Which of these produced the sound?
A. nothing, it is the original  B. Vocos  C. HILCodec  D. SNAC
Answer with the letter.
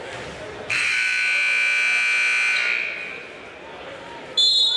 A